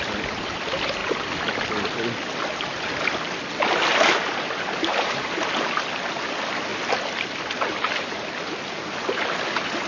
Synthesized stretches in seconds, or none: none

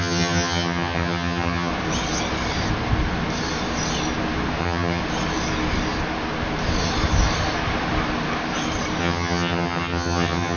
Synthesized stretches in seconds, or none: 0.0-1.7; 4.6-5.0; 9.0-10.6

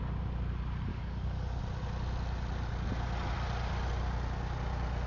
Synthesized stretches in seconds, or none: 0.9-1.6

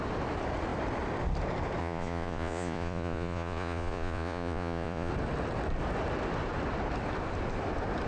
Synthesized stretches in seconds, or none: 1.8-5.1

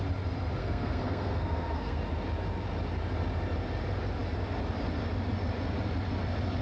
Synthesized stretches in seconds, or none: 0.6-2.0

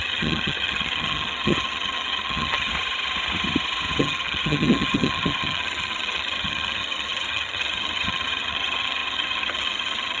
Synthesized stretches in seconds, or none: 0.0-2.7; 4.0-10.2

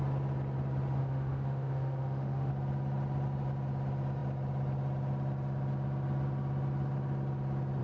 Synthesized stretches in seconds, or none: 1.0-2.5